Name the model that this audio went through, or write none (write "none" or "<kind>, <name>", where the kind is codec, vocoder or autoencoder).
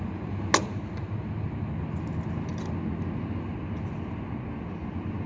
none